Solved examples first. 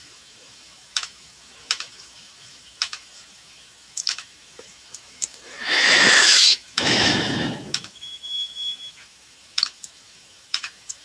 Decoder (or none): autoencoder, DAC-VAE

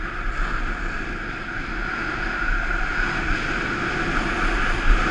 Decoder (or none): none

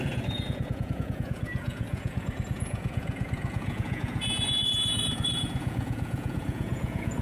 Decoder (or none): vocoder, Vocos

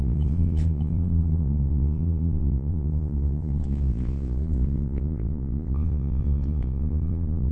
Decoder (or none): vocoder, Vocos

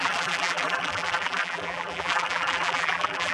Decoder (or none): vocoder, BigVGAN v2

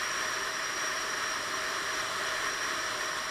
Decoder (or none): none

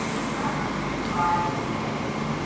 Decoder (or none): none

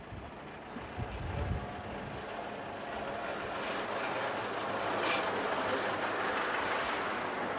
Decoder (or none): none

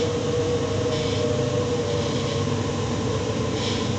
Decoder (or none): none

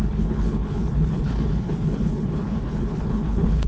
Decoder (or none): codec, HILCodec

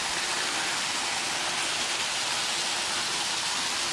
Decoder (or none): none